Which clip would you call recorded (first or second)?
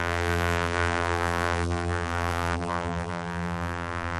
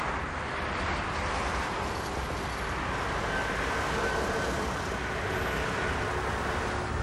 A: second